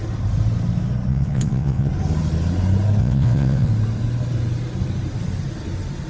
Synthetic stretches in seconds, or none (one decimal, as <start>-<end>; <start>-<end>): 1.1-1.9; 3.0-3.7